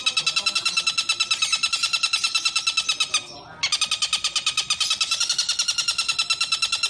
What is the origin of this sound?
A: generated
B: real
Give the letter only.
B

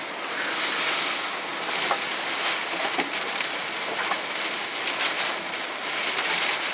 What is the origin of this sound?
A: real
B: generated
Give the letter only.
A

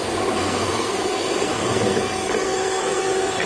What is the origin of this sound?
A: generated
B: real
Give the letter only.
A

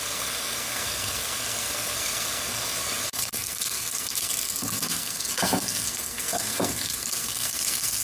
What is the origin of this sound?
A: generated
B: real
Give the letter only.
A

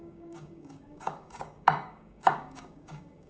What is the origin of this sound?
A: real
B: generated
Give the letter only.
B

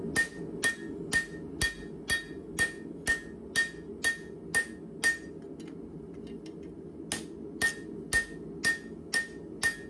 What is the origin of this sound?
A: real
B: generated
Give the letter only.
A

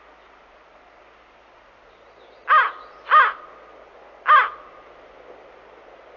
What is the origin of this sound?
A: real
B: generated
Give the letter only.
A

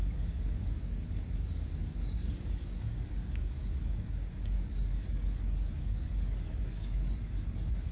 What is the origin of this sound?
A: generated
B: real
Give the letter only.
A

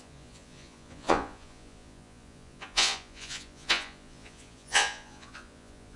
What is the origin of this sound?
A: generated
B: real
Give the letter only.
A